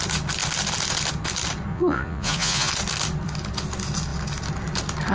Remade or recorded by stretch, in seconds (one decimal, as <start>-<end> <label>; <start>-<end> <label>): 0.0-1.7 recorded; 1.7-2.7 remade; 2.7-5.1 recorded

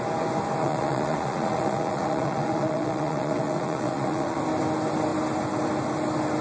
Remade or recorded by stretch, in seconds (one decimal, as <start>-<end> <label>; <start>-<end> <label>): 0.0-0.6 recorded; 0.6-4.4 remade; 4.4-6.4 recorded